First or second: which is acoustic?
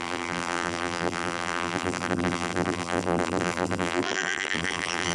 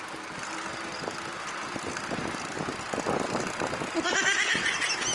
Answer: second